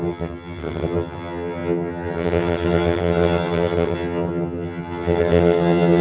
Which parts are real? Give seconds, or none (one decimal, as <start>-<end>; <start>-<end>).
none